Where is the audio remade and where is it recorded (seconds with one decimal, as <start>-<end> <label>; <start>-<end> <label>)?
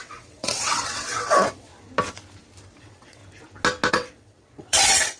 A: 0.0-1.7 remade; 1.7-2.8 recorded; 2.8-3.2 remade; 3.2-3.9 recorded; 3.9-5.2 remade